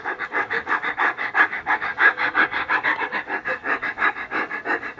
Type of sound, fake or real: fake